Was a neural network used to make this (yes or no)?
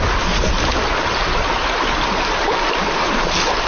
no